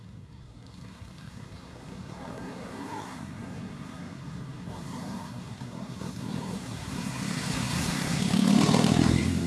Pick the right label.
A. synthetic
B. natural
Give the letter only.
A